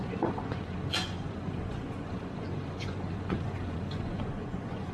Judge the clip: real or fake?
fake